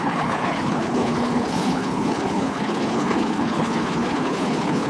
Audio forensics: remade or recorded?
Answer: remade